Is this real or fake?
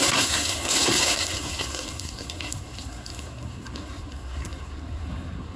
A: fake